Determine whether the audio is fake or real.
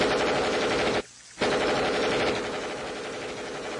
real